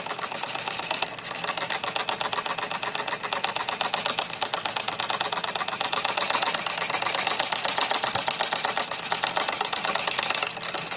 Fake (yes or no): no